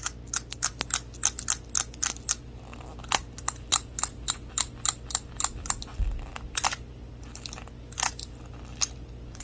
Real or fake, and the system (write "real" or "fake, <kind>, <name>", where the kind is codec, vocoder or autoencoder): real